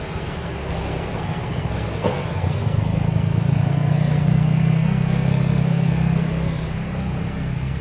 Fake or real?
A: fake